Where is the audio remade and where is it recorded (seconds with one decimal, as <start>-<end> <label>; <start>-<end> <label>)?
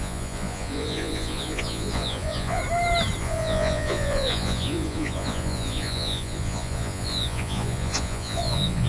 0.0-2.6 remade; 2.6-3.2 recorded; 3.2-8.9 remade